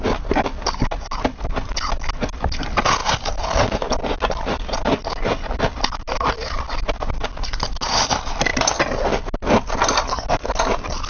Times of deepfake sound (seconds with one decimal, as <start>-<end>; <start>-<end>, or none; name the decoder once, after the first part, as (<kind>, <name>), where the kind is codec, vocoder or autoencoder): none